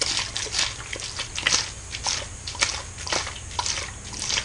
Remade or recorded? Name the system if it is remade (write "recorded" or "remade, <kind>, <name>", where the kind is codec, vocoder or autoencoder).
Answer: recorded